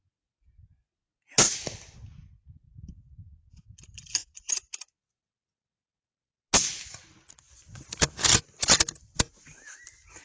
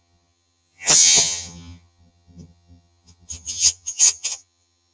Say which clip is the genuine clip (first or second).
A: first